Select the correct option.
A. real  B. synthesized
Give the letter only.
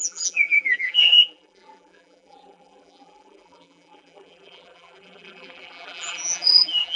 B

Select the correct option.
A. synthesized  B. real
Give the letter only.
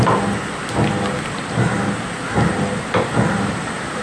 B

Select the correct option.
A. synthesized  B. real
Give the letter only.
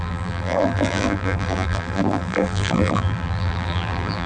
A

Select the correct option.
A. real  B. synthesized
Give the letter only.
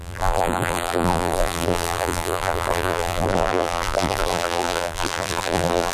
B